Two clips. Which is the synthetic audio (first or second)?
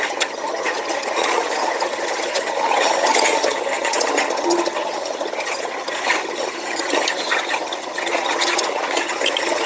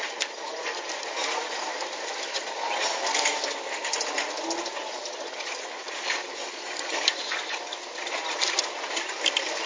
first